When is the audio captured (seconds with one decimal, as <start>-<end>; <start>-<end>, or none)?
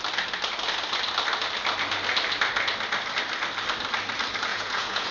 0.0-4.5